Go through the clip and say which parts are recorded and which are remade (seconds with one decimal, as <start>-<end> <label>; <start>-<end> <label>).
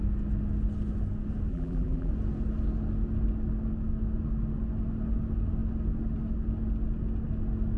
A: 0.0-1.5 recorded; 1.5-2.1 remade; 2.1-7.8 recorded